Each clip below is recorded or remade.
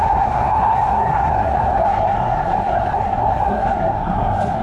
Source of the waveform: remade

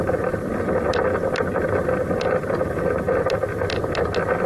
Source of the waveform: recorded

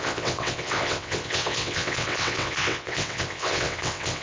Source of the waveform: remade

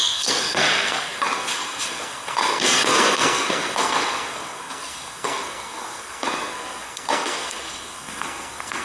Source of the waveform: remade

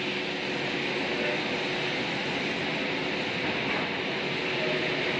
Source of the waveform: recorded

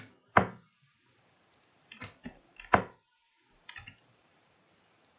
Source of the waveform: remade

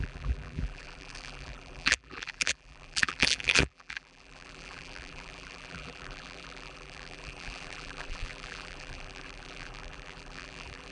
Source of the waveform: remade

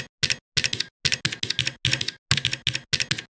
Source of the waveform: recorded